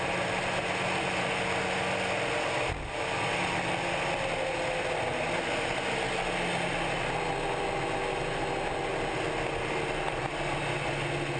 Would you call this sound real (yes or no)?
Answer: yes